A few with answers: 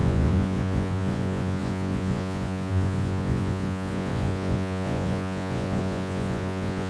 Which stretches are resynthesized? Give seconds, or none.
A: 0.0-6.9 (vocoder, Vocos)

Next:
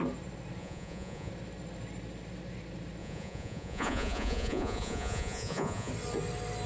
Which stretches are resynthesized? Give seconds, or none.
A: 0.6-1.3 (vocoder, Vocos); 3.0-5.9